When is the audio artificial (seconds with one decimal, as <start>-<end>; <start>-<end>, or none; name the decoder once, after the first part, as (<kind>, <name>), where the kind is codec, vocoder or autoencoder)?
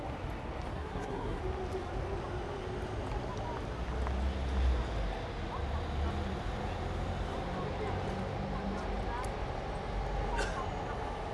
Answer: 0.7-1.4 (codec, SNAC)